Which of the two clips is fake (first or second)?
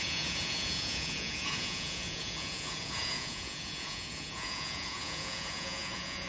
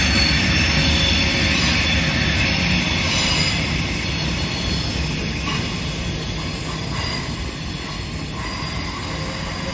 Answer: first